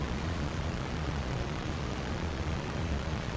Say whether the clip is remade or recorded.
remade